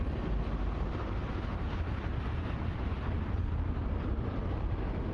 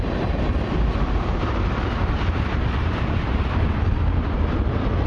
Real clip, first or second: first